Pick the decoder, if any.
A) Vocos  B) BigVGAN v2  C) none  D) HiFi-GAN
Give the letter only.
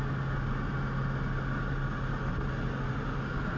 C